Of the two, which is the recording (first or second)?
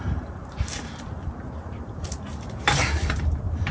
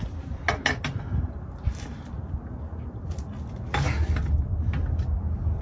second